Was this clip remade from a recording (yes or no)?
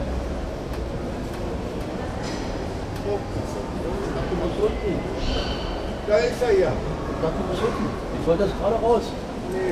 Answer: no